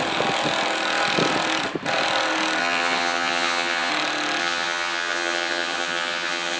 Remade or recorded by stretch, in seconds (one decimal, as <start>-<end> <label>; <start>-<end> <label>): 0.0-2.6 recorded; 2.6-3.9 remade; 3.9-4.4 recorded; 4.4-6.6 remade

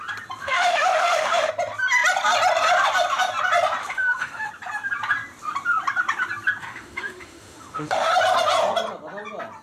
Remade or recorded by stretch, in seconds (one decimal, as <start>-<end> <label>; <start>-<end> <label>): 0.0-0.4 recorded; 0.4-1.5 remade; 1.5-3.8 recorded; 3.8-4.5 remade; 4.5-6.6 recorded; 6.6-8.1 remade; 8.1-9.6 recorded

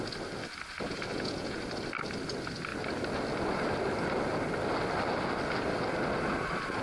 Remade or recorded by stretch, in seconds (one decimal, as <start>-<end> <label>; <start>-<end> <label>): 0.0-1.1 recorded; 1.1-1.6 remade; 1.6-6.8 recorded

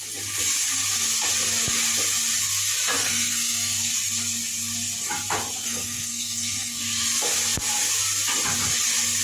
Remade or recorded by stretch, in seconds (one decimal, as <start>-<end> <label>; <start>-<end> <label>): 0.0-3.0 recorded; 3.0-3.9 remade; 3.9-5.6 recorded; 5.6-6.8 remade; 6.8-9.2 recorded

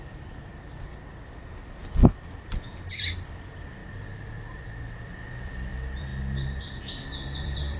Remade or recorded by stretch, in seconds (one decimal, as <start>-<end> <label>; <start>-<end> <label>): 0.0-0.5 remade; 0.5-2.5 recorded; 2.5-3.8 remade; 3.8-4.3 recorded; 4.3-6.1 remade; 6.1-6.6 recorded; 6.6-7.8 remade

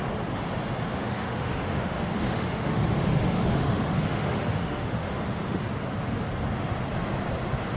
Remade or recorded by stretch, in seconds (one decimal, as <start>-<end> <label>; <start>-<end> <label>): 0.0-0.9 recorded; 0.9-5.6 remade; 5.6-7.8 recorded

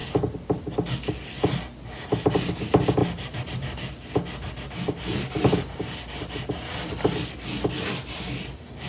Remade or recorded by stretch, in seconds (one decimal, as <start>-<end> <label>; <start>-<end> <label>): 0.0-8.9 recorded

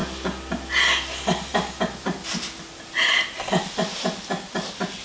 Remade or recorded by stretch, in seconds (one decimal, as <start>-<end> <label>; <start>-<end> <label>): 0.0-5.0 recorded